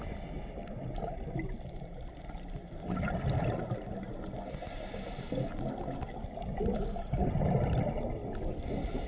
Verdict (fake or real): real